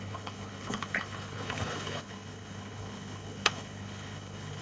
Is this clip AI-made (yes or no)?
yes